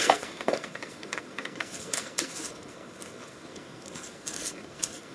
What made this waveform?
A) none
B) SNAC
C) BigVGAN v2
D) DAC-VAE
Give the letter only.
B